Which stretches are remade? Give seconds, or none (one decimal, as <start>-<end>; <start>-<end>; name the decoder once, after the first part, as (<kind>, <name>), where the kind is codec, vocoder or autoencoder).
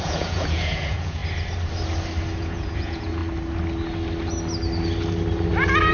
0.0-1.2 (vocoder, Vocos); 2.4-3.2